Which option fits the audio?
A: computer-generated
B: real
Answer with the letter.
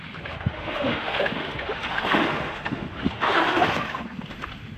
A